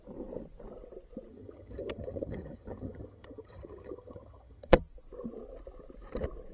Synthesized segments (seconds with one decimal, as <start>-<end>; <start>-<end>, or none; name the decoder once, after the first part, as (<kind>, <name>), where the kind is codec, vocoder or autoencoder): 1.3-4.8 (vocoder, HiFi-GAN)